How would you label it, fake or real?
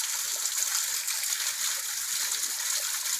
real